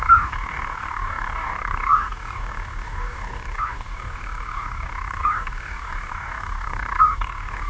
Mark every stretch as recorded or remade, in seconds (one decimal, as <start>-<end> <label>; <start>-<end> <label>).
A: 0.0-7.7 remade